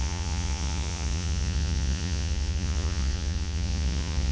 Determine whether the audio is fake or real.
fake